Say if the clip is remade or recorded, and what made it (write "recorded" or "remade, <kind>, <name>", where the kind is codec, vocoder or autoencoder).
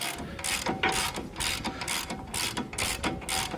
recorded